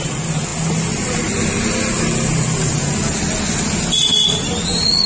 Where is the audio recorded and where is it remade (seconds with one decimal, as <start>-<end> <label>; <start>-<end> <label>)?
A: 0.0-5.1 recorded

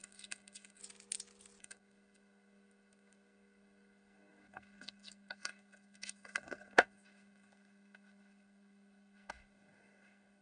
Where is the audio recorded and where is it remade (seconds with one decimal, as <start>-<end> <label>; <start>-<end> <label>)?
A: 0.0-0.8 remade; 0.8-1.6 recorded; 1.6-10.4 remade

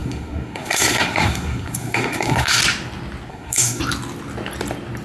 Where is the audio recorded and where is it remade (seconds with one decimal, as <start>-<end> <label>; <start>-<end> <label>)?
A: 0.0-2.6 remade; 2.6-3.3 recorded; 3.3-3.8 remade; 3.8-5.0 recorded

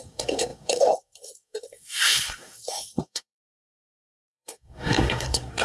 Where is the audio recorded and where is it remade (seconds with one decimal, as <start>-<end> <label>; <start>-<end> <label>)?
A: 0.0-5.6 remade

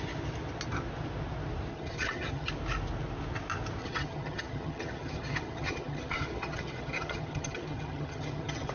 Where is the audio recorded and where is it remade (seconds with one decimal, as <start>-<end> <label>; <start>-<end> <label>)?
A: 0.0-1.7 recorded; 1.7-2.5 remade; 2.5-3.8 recorded; 3.8-8.7 remade

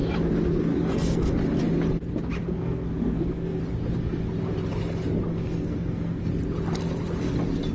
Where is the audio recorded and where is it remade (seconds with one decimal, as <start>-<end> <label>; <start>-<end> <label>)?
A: 0.0-0.7 recorded; 0.7-1.3 remade; 1.3-2.4 recorded; 2.4-3.6 remade; 3.6-5.3 recorded; 5.3-6.3 remade; 6.3-7.7 recorded

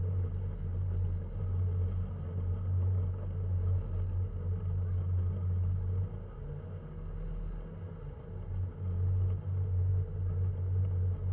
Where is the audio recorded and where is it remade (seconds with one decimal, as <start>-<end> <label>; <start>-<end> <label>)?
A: 0.0-11.3 recorded